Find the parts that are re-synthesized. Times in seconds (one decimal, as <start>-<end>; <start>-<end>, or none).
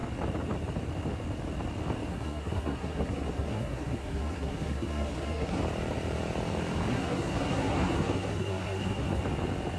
2.1-5.6; 6.9-9.2